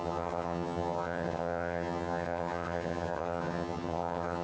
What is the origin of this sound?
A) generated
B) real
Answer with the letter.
A